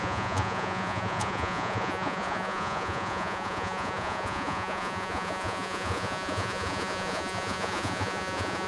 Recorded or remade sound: remade